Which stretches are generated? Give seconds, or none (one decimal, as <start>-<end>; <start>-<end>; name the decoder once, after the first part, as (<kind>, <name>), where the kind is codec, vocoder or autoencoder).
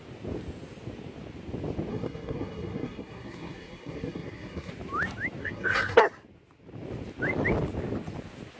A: 1.9-4.7 (codec, SNAC); 5.4-6.0